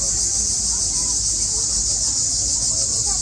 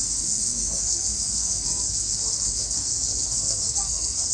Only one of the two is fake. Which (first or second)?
second